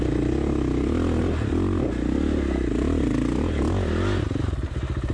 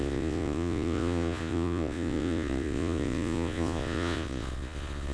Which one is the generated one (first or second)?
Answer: second